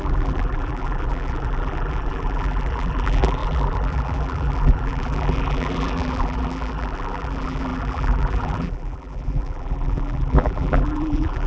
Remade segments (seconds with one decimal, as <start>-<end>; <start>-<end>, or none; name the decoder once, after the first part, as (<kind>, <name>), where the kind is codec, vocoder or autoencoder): 0.0-11.5 (vocoder, BigVGAN v2)